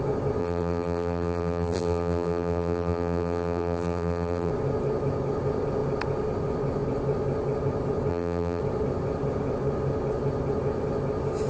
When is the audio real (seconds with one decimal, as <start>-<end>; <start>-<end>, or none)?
0.0-0.4; 4.5-8.1; 8.6-11.5